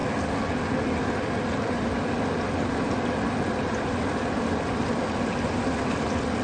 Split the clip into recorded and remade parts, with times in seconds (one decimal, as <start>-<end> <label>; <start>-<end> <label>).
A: 0.0-6.4 recorded